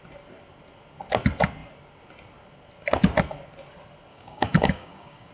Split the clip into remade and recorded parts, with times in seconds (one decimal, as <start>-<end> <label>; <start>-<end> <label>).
0.0-4.1 recorded; 4.1-5.3 remade